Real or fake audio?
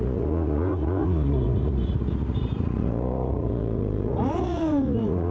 fake